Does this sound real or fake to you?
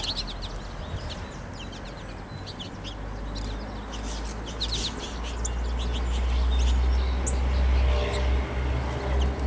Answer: real